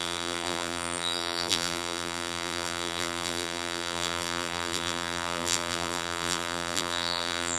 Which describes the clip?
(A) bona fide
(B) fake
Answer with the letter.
B